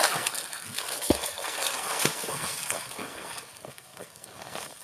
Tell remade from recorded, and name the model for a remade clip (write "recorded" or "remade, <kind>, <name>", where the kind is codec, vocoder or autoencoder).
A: remade, codec, SNAC